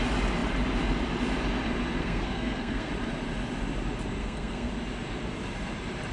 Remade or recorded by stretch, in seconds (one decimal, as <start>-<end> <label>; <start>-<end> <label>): 0.0-2.0 recorded; 2.0-2.9 remade; 2.9-4.2 recorded; 4.2-4.7 remade; 4.7-6.1 recorded